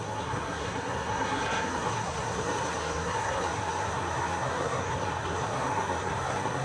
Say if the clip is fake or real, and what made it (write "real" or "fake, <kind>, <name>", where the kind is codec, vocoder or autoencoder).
fake, codec, SNAC